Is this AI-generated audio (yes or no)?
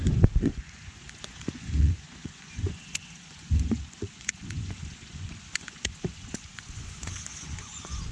yes